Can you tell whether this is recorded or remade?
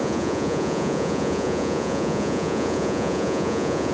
remade